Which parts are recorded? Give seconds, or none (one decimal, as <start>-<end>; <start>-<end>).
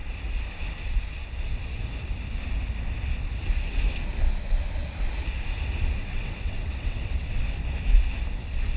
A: 0.0-6.0; 7.4-8.8